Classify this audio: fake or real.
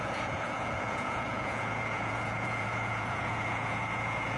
fake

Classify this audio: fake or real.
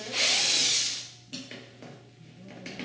real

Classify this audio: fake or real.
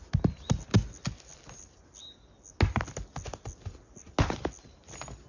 real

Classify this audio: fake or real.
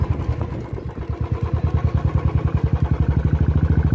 real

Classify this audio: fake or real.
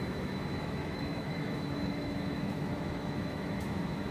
fake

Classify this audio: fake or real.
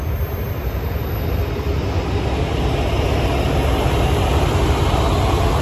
real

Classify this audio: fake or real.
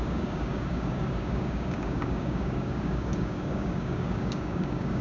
fake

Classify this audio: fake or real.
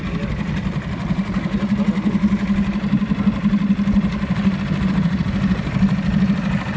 real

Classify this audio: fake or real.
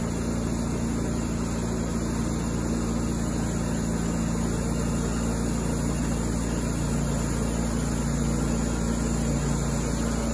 real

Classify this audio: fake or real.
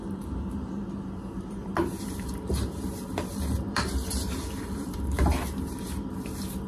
fake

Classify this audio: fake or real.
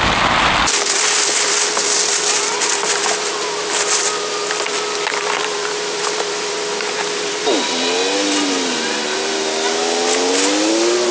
real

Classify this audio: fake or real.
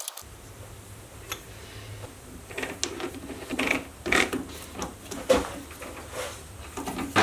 real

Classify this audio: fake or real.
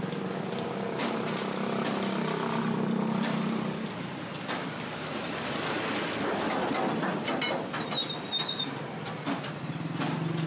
real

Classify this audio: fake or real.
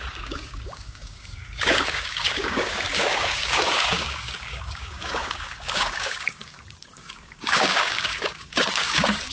fake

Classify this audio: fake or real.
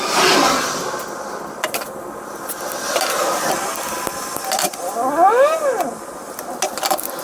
real